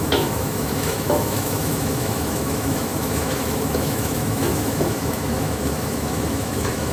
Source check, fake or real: fake